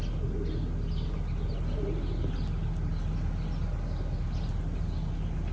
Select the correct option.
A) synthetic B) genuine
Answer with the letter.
B